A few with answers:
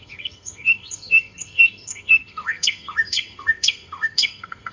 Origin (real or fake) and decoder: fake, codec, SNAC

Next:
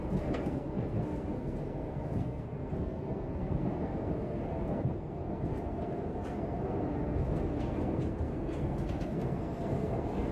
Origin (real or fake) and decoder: fake, codec, SNAC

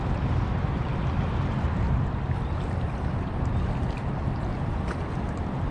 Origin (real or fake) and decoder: real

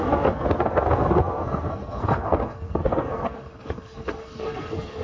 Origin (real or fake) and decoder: fake, codec, SNAC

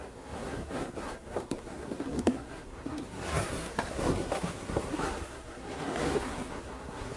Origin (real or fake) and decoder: fake, codec, SNAC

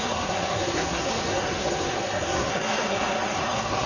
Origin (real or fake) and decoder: fake, codec, SNAC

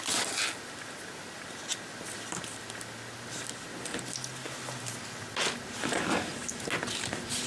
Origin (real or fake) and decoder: real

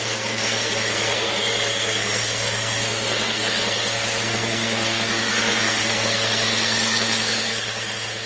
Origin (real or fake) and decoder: fake, codec, SNAC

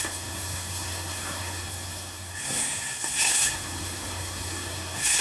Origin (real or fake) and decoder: fake, codec, SNAC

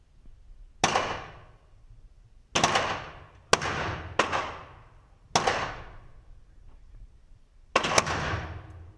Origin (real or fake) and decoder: real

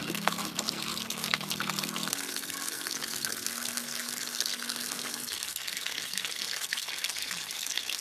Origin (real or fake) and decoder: fake, codec, SNAC